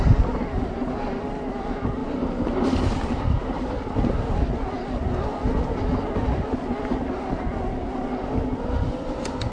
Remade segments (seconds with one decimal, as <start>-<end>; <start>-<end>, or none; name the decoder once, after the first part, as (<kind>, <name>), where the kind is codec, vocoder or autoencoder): 2.0-3.7 (vocoder, BigVGAN v2)